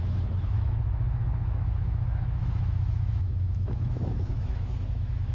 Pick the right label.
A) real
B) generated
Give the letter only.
B